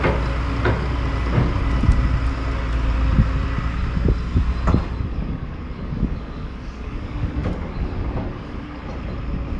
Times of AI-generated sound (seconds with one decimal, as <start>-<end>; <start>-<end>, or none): 5.1-8.8